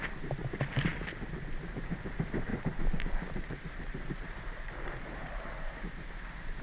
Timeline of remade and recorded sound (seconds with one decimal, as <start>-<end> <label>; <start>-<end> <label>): 0.0-2.5 recorded; 2.5-6.6 remade